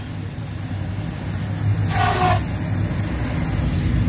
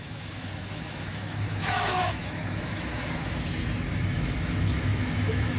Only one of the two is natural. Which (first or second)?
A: first